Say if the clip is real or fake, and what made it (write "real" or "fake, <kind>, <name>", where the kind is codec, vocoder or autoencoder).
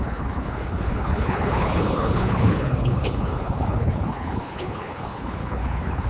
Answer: fake, codec, HILCodec